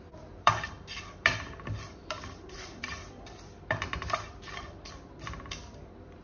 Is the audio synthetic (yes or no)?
yes